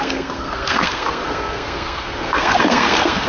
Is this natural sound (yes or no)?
no